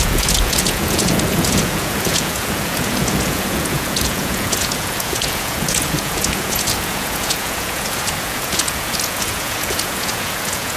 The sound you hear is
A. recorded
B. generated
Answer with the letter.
B